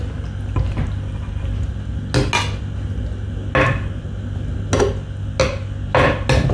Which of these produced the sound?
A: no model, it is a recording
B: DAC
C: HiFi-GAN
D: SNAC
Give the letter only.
A